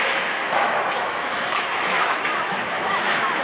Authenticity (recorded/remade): remade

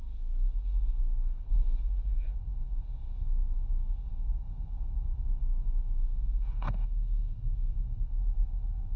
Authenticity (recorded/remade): remade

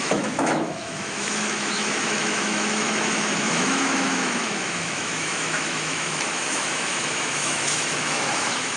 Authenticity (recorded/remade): remade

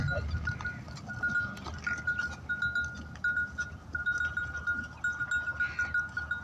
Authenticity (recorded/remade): recorded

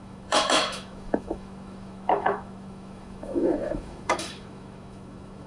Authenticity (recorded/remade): remade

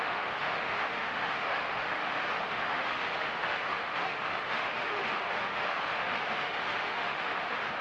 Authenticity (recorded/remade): remade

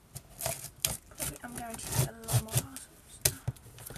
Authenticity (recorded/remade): recorded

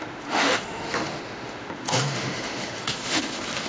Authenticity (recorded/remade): remade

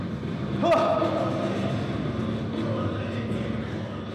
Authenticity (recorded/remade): recorded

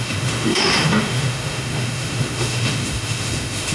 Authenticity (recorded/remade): remade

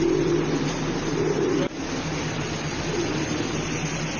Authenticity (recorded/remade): recorded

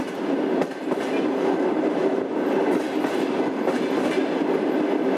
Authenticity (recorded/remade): recorded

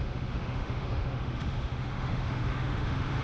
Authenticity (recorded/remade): remade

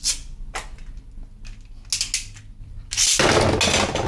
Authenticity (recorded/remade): recorded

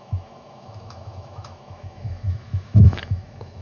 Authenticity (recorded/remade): remade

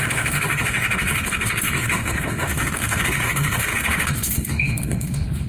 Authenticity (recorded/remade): remade